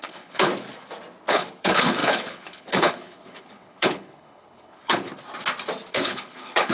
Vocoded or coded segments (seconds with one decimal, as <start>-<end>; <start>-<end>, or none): 0.0-0.5; 1.3-5.1; 5.9-6.7